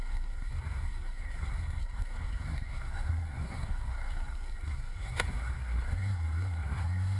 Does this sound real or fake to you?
fake